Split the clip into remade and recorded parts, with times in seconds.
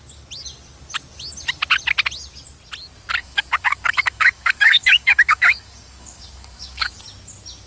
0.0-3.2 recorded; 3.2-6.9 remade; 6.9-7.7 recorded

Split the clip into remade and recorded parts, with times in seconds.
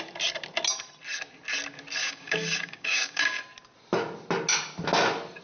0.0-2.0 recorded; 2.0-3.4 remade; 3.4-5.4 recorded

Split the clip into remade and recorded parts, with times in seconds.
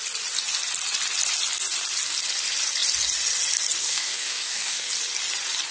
0.0-3.8 recorded; 3.8-4.9 remade; 4.9-5.7 recorded